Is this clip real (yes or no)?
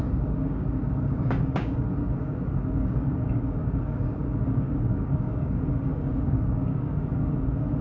no